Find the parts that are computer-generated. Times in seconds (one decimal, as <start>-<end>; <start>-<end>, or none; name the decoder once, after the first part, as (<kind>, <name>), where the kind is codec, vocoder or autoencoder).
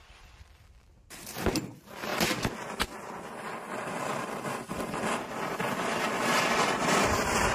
0.0-2.1 (vocoder, BigVGAN v2); 6.6-7.5